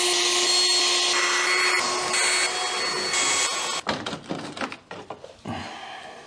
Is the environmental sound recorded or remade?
recorded